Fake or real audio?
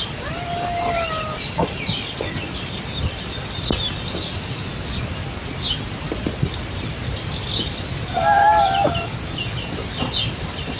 real